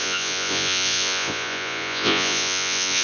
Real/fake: fake